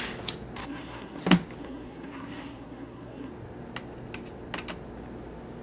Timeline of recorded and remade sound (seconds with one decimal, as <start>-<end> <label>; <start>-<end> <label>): 0.0-0.6 recorded; 0.6-1.2 remade; 1.2-1.6 recorded; 1.6-3.3 remade; 3.3-5.6 recorded